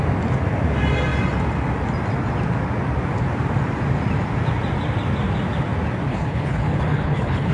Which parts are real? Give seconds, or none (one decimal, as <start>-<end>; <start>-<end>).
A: 0.0-6.1